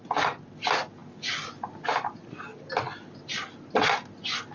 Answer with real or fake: real